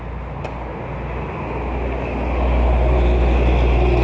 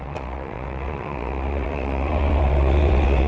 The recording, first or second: first